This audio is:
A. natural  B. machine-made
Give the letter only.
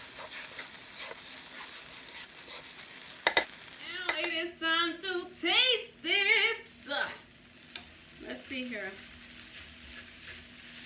A